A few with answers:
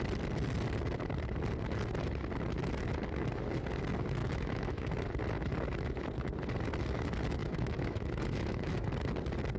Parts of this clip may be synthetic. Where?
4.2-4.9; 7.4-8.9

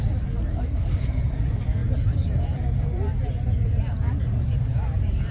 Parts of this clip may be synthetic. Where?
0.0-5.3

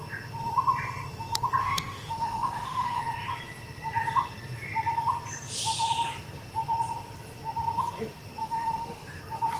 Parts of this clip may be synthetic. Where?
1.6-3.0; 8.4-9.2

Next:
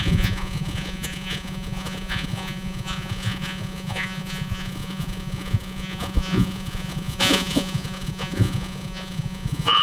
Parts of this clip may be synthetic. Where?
0.0-9.8